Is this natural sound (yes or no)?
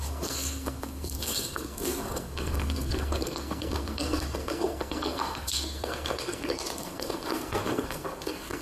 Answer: no